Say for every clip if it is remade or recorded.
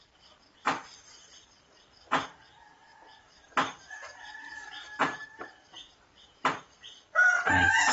recorded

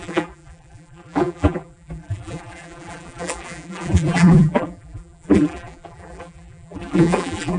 remade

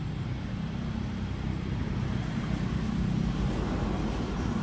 remade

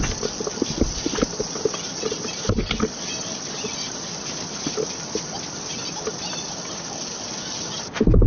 recorded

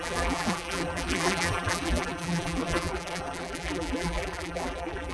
remade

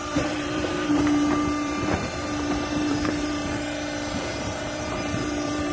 remade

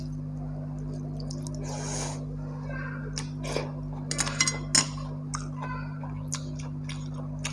recorded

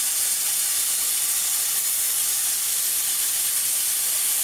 recorded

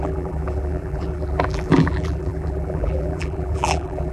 remade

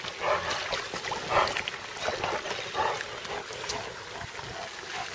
recorded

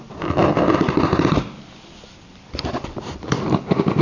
remade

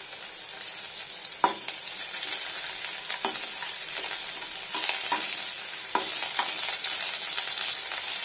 recorded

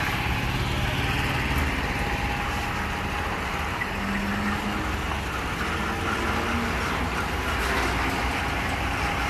recorded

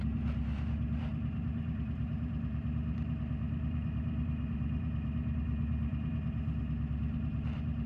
remade